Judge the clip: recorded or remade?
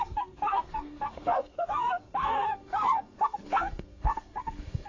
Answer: remade